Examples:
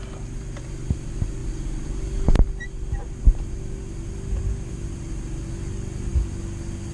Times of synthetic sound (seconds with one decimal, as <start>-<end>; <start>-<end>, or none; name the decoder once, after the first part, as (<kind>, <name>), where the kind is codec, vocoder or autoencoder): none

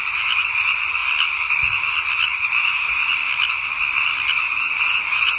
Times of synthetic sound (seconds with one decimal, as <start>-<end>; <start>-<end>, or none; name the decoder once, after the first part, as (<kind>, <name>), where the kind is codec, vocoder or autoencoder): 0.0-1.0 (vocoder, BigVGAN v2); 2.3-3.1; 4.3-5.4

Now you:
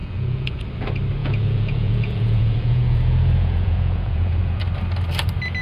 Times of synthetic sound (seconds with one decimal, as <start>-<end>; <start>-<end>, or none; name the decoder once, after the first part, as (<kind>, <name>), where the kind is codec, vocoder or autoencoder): 0.0-0.6 (vocoder, Vocos); 1.2-4.6